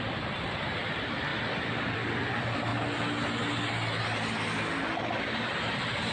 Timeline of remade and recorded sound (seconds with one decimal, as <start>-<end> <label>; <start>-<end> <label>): 0.0-1.3 remade; 1.3-1.9 recorded; 1.9-2.7 remade; 2.7-5.2 recorded; 5.2-6.1 remade